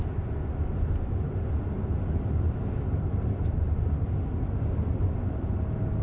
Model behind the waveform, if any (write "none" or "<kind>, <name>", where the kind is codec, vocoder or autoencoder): none